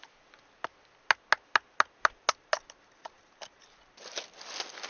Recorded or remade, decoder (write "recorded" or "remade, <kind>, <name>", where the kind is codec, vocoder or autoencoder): recorded